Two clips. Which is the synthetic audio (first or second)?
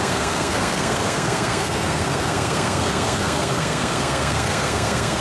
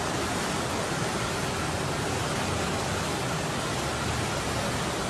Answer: first